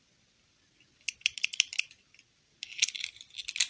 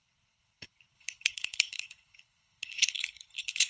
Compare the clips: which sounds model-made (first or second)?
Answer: second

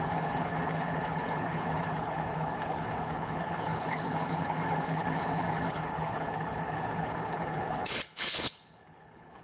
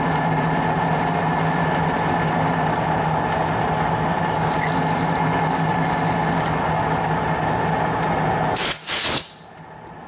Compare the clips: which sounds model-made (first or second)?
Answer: first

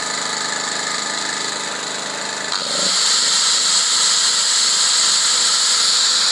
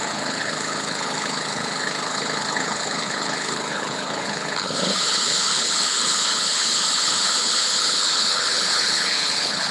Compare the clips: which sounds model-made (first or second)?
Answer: second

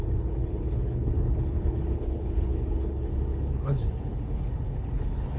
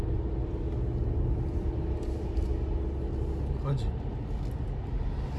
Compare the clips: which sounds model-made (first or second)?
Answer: first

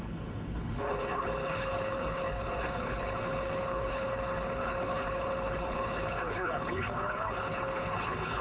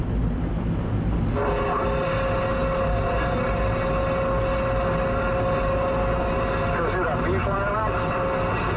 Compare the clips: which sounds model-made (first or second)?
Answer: first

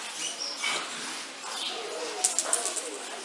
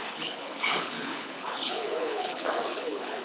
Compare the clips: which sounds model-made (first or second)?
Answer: second